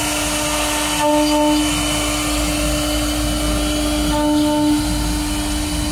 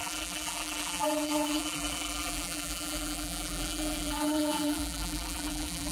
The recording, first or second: first